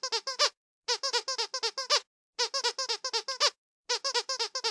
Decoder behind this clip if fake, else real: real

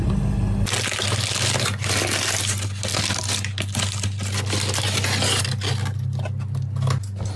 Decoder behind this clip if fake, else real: real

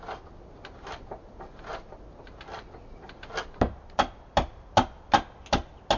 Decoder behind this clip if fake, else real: real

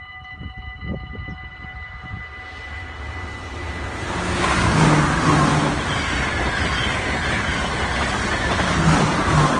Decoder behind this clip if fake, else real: real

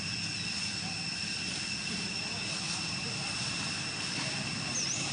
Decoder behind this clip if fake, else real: real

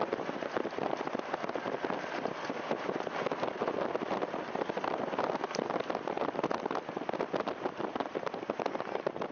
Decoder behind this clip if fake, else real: real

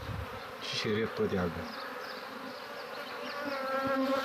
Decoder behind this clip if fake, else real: real